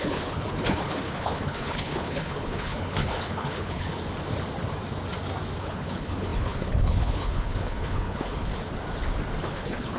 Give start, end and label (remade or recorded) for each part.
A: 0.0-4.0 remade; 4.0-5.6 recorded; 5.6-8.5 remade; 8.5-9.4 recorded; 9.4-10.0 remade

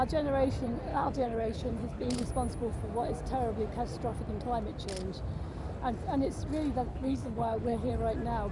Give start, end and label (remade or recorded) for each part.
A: 0.0-0.9 recorded; 0.9-2.3 remade; 2.3-6.9 recorded; 6.9-7.9 remade; 7.9-8.5 recorded